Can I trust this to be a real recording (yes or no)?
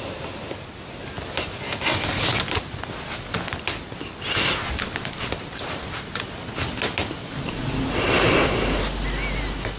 yes